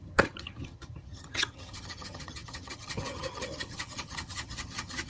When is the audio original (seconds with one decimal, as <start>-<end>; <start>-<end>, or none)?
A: none